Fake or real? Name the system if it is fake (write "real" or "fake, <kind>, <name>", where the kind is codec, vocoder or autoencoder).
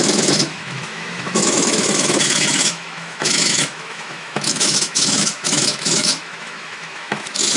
fake, autoencoder, DAC-VAE